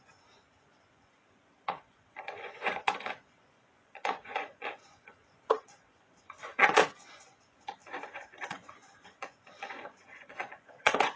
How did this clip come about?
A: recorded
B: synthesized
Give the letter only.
B